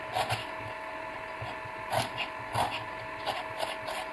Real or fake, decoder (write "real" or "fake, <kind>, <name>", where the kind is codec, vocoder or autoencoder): real